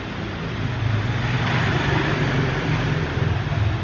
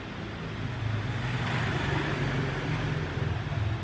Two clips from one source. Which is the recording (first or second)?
second